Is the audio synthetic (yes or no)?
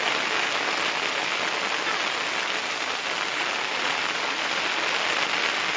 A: no